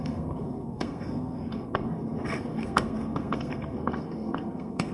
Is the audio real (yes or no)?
no